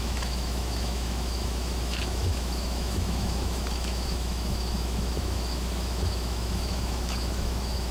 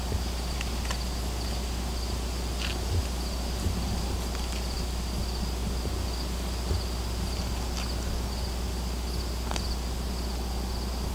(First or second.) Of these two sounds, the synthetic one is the first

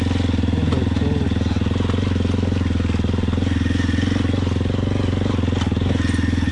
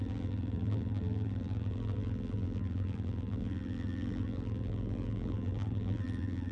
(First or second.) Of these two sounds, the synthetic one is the second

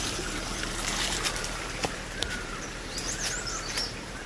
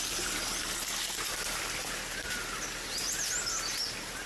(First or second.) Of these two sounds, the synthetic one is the first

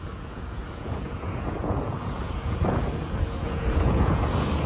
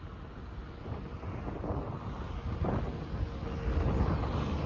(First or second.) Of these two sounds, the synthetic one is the first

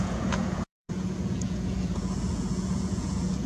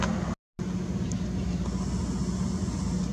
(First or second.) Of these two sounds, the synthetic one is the first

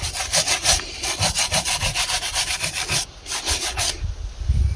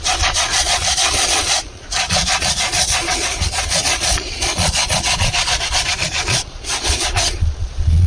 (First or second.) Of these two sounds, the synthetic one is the second